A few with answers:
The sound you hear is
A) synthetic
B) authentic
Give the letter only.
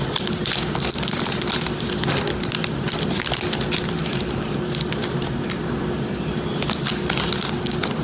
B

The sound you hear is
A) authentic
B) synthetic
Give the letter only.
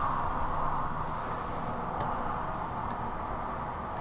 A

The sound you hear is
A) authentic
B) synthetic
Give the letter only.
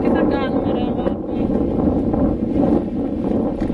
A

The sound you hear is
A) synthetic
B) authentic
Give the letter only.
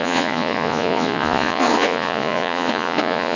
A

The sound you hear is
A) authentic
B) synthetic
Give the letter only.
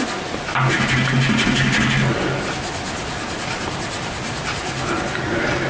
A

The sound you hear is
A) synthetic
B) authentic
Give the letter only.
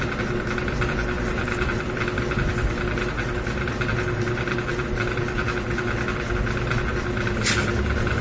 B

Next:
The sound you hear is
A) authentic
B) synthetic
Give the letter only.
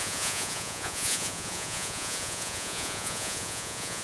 B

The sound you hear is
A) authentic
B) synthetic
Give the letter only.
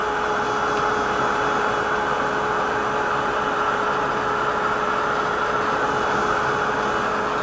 A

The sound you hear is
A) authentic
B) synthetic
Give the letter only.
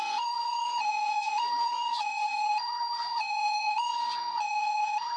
B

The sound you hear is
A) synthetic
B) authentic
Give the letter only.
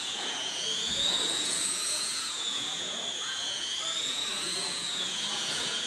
A